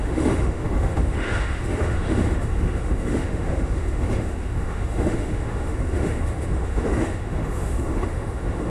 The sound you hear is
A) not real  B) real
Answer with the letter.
A